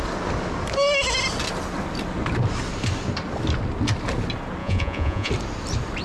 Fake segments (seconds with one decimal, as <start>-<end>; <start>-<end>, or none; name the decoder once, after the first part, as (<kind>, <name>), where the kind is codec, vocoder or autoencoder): 4.6-5.3 (vocoder, Vocos)